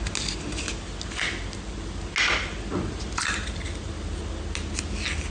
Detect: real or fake real